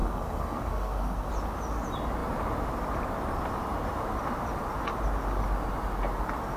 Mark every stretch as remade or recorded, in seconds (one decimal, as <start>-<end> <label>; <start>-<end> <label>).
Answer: 0.0-1.3 remade; 1.3-6.6 recorded